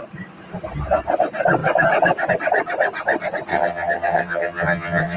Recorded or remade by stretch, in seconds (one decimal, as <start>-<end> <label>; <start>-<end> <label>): 0.0-3.5 recorded; 3.5-5.2 remade